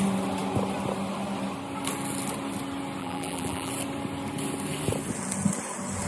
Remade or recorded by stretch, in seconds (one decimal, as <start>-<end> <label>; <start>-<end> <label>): 0.0-3.0 recorded; 3.0-3.7 remade; 3.7-6.1 recorded